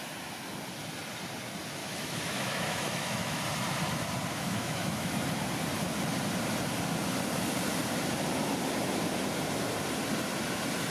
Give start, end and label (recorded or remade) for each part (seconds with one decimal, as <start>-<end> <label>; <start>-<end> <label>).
0.0-1.8 recorded; 1.8-3.4 remade; 3.4-4.3 recorded; 4.3-5.2 remade; 5.2-10.9 recorded